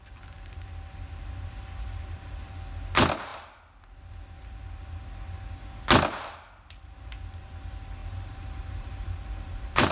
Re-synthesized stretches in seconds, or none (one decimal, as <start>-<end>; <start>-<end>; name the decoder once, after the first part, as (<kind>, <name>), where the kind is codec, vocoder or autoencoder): 8.0-9.9 (vocoder, BigVGAN v2)